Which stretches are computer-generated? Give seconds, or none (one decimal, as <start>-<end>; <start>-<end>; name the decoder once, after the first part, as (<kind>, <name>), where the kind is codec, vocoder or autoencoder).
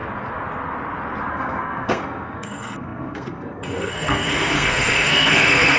1.3-5.8 (codec, SNAC)